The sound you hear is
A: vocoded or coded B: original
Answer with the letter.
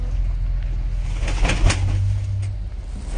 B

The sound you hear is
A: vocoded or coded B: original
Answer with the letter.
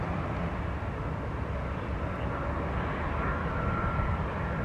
B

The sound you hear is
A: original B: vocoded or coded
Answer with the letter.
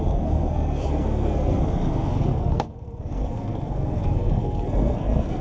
B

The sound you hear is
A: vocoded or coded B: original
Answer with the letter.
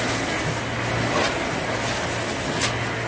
B